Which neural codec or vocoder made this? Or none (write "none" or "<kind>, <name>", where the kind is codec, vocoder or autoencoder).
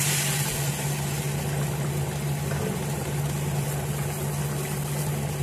none